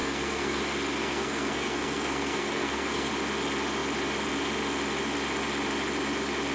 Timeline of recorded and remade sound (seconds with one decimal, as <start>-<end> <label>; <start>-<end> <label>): 0.0-0.6 remade; 0.6-1.0 recorded; 1.0-3.1 remade; 3.1-6.5 recorded